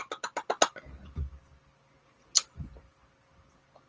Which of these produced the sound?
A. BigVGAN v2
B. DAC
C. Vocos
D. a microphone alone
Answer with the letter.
D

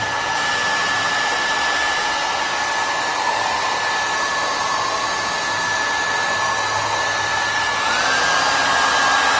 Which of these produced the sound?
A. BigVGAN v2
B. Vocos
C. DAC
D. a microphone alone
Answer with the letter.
D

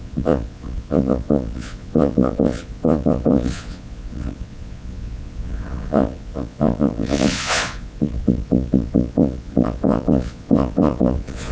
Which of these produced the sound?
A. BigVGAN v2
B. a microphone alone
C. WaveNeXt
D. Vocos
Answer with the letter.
D